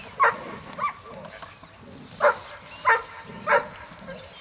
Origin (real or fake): real